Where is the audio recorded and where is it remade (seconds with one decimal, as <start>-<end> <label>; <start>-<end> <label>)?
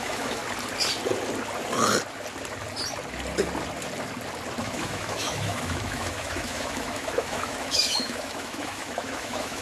0.0-0.4 remade; 0.4-4.6 recorded; 4.6-9.6 remade